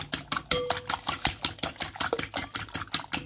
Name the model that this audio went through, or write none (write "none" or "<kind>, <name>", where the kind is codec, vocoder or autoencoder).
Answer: none